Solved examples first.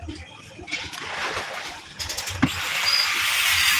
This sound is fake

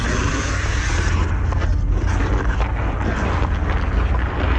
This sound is real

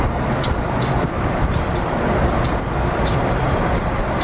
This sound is fake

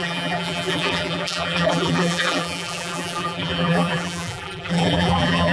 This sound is fake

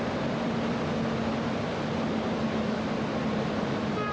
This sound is real